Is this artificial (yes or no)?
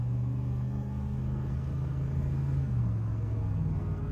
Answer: yes